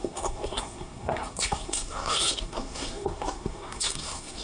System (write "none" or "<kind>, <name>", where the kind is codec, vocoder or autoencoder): codec, SNAC